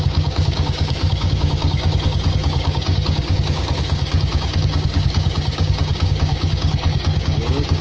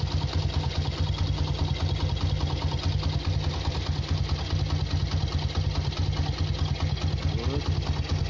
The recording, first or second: second